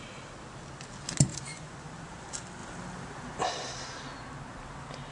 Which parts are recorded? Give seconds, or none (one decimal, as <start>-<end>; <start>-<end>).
0.0-1.3; 1.9-5.1